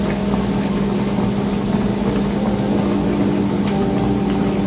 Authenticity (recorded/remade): recorded